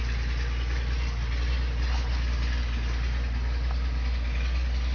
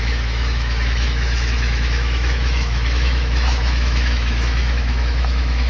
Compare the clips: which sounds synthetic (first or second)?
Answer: second